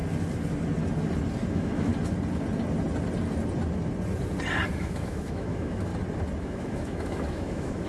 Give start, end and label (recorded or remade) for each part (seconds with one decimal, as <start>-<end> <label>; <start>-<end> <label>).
0.0-1.5 recorded; 1.5-1.9 remade; 1.9-4.8 recorded; 4.8-5.9 remade; 5.9-6.4 recorded; 6.4-7.9 remade